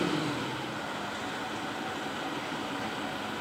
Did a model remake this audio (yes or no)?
no